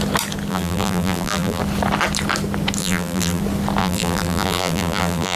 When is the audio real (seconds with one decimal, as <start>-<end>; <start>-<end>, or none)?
0.0-0.5; 1.6-2.8; 3.4-3.8